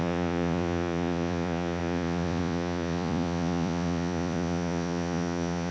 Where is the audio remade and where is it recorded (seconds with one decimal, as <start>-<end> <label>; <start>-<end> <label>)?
0.0-5.7 remade